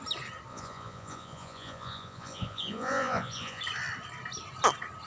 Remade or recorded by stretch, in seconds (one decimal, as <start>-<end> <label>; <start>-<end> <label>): 0.0-0.5 recorded; 0.5-3.6 remade; 3.6-5.1 recorded